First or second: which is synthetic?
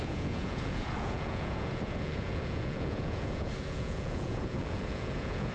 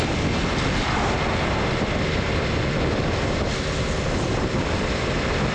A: first